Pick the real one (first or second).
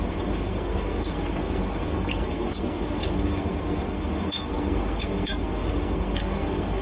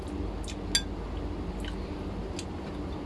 second